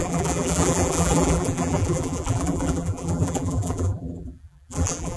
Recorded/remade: remade